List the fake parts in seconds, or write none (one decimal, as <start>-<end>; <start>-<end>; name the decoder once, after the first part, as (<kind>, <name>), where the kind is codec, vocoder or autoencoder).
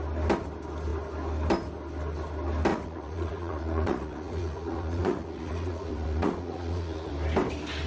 2.7-7.1 (vocoder, Vocos)